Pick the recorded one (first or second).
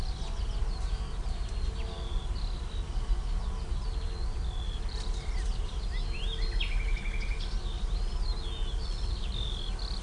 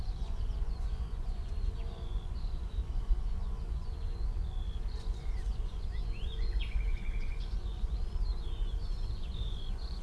first